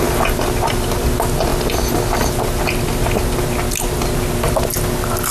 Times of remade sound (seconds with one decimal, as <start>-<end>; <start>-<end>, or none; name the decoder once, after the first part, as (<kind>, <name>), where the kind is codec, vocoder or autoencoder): none